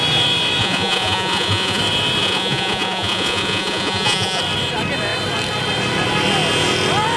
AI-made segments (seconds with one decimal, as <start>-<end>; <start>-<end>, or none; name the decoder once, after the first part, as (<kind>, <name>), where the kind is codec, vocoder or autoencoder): 0.6-1.8 (vocoder, Vocos); 2.2-4.4